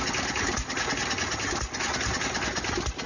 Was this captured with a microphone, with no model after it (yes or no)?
yes